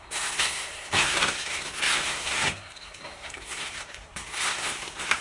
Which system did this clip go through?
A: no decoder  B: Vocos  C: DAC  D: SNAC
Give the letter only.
D